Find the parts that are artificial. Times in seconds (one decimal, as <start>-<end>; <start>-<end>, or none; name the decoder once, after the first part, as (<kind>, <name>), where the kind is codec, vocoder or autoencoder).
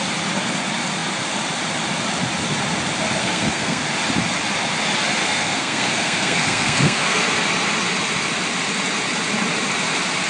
3.2-3.8 (codec, SNAC); 5.2-7.2